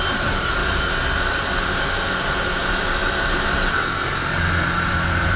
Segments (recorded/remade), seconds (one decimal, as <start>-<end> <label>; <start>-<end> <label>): 0.0-0.6 remade; 0.6-2.6 recorded; 2.6-5.4 remade